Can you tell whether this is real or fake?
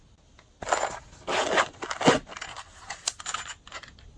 real